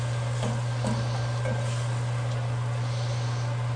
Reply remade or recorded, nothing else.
recorded